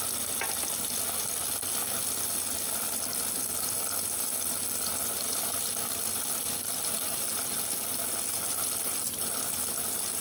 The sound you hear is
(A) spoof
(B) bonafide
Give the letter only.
B